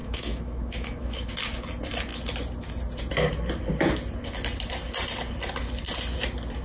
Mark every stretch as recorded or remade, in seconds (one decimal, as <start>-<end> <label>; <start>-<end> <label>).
0.0-1.3 remade; 1.3-6.6 recorded